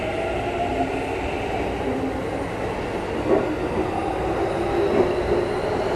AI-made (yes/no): no